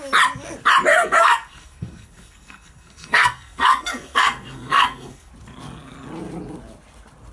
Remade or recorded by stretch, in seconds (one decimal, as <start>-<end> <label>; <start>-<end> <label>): 0.0-0.9 recorded; 0.9-5.3 remade; 5.3-7.3 recorded